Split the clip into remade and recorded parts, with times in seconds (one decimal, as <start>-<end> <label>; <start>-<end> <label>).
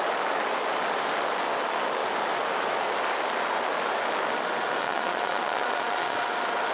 0.0-4.8 recorded; 4.8-6.2 remade; 6.2-6.7 recorded